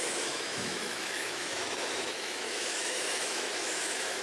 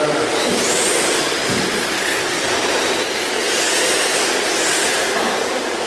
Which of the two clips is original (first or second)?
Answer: second